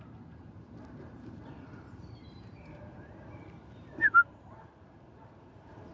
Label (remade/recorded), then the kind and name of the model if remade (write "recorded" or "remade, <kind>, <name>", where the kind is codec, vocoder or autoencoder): remade, vocoder, BigVGAN v2